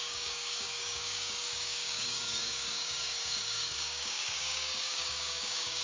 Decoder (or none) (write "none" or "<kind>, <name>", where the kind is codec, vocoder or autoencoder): codec, DAC